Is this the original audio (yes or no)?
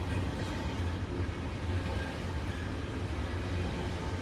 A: yes